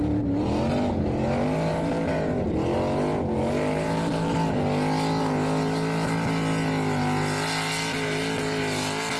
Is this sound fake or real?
real